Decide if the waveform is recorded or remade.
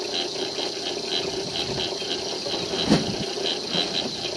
recorded